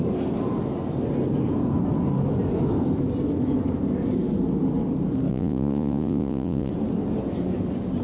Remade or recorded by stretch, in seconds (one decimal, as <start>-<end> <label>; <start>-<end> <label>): 0.0-5.3 recorded; 5.3-6.7 remade; 6.7-8.0 recorded